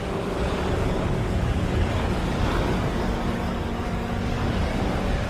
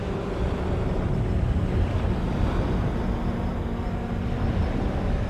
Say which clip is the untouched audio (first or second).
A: second